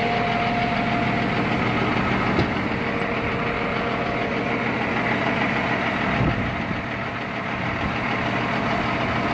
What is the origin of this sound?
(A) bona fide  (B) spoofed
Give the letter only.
A